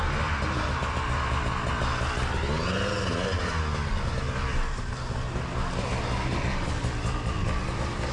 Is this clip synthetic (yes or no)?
no